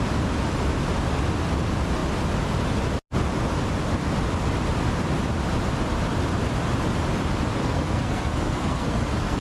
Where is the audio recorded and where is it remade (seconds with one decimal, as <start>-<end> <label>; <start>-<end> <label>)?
0.0-7.6 recorded; 7.6-9.4 remade